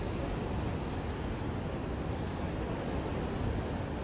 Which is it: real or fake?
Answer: real